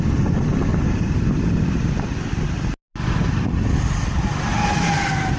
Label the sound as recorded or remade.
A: recorded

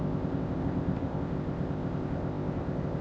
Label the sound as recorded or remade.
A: remade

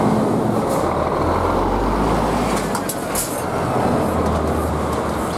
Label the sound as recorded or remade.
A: recorded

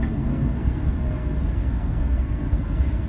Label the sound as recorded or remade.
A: remade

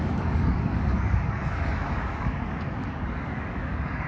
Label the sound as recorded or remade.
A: remade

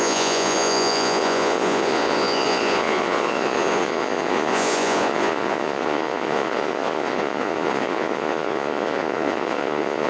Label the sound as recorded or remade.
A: remade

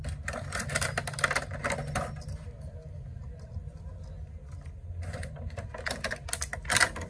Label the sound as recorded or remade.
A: recorded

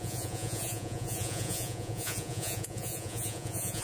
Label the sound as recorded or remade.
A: remade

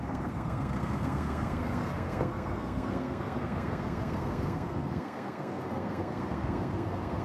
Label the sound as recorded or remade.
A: remade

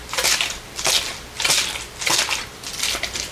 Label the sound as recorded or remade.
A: recorded